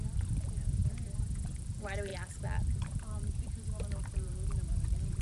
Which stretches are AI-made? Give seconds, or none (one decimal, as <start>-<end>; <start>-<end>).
0.0-0.8; 1.6-5.2